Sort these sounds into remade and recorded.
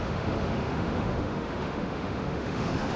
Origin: remade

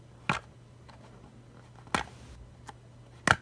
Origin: recorded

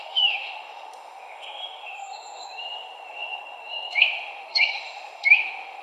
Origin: remade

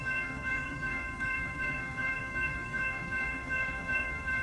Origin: remade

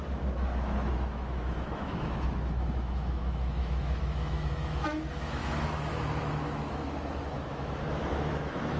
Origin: remade